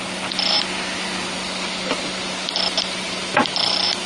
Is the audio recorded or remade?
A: recorded